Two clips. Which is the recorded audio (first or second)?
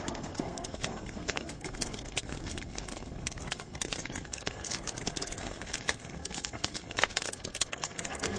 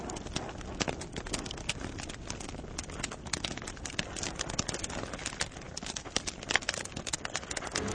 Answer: second